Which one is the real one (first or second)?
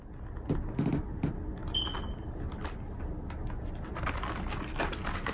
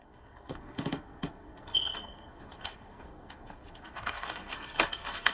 first